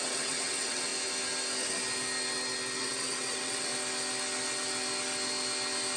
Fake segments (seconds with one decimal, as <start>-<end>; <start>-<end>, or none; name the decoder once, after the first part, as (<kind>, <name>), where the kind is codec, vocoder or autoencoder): 0.0-0.9 (vocoder, WaveNeXt); 2.8-3.7